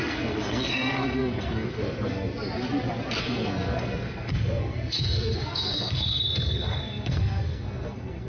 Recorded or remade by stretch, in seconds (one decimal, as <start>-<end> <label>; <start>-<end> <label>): 0.0-2.3 remade; 2.3-3.2 recorded; 3.2-8.3 remade